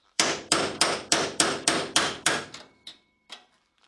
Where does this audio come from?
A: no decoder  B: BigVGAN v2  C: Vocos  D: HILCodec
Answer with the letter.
B